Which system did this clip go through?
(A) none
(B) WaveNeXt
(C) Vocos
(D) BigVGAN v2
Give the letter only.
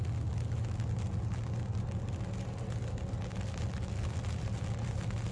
A